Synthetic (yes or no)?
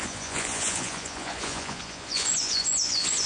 yes